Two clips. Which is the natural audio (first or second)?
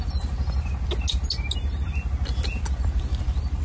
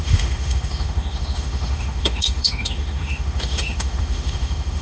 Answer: first